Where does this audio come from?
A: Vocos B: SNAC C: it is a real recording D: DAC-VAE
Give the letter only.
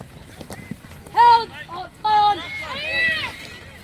C